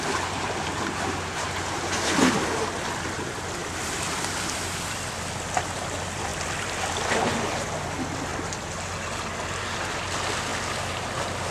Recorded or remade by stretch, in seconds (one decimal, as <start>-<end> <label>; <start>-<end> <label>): 0.0-3.6 recorded; 3.6-5.1 remade; 5.1-6.3 recorded; 6.3-7.3 remade; 7.3-11.5 recorded